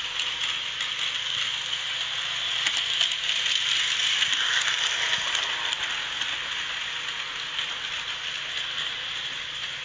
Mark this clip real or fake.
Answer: real